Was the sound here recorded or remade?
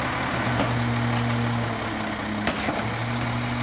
recorded